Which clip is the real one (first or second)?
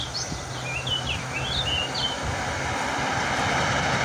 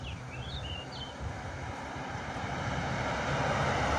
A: first